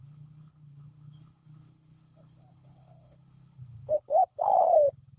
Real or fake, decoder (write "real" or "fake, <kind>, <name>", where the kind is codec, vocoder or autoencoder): fake, codec, HILCodec